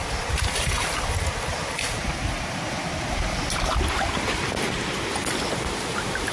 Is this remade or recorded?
recorded